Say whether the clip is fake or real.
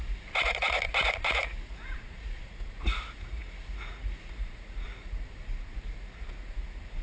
fake